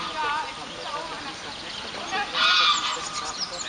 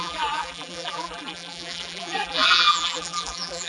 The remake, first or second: second